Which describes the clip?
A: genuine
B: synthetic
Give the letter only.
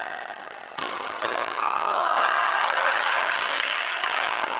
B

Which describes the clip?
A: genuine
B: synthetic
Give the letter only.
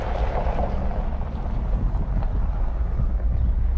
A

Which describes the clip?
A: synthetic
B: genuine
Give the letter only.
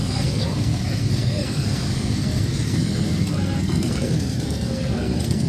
A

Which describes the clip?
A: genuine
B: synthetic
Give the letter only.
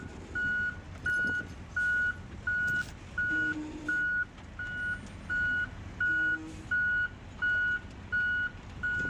A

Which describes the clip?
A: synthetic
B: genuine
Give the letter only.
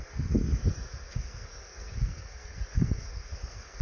A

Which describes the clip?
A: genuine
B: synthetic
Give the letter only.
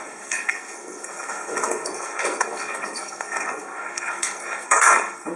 B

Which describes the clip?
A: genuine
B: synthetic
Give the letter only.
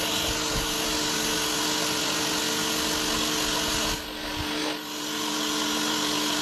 A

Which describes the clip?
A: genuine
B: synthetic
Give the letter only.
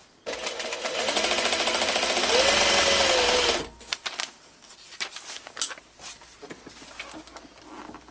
A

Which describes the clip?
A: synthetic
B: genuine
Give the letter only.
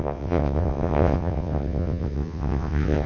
A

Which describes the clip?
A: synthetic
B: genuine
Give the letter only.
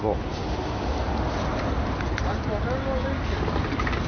B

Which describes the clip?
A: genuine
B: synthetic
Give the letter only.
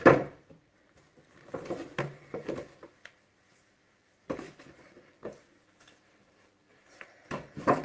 B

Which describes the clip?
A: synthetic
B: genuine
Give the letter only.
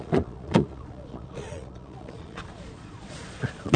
A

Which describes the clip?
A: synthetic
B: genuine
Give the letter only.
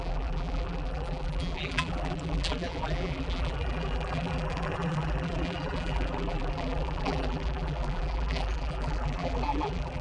A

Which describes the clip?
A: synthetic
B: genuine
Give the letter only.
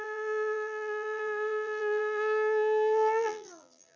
A